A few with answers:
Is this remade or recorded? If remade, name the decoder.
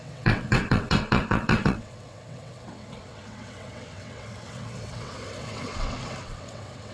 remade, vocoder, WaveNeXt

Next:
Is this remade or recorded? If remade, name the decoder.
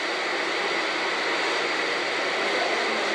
recorded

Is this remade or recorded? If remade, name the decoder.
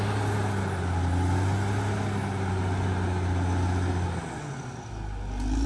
recorded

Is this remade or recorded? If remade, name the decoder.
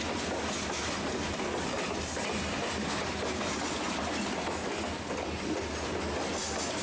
recorded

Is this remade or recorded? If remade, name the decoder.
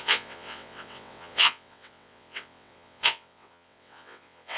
remade, vocoder, WaveNeXt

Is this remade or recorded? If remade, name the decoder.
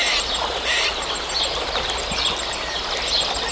recorded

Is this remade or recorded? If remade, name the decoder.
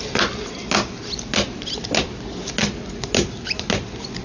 recorded